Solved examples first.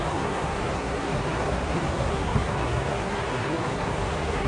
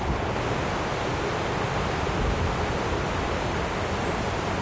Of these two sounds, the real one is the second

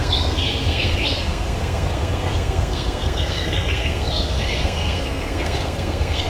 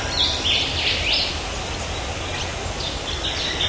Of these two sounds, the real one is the second